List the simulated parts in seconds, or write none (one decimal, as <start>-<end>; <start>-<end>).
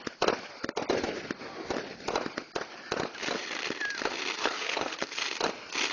4.4-5.2